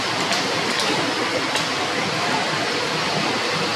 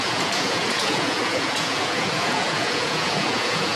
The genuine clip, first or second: first